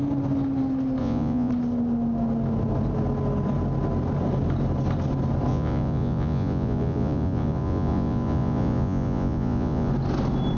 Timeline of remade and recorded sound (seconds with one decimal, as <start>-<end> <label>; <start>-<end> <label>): 0.0-1.0 recorded; 1.0-1.5 remade; 1.5-5.5 recorded; 5.5-9.9 remade; 9.9-10.6 recorded